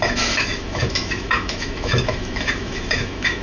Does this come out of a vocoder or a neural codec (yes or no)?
yes